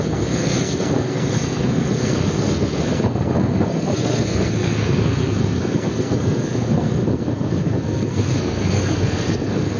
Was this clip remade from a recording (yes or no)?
yes